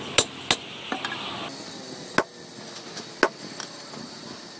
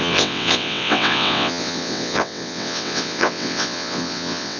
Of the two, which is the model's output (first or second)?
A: second